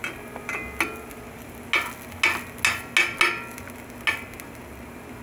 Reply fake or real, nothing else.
real